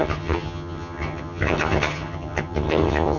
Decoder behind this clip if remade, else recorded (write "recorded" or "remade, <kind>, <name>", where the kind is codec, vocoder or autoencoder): remade, vocoder, HiFi-GAN